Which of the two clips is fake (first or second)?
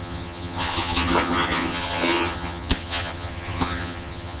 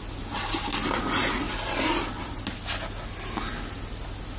first